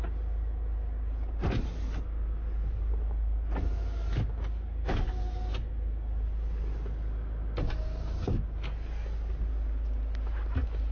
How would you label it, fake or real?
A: real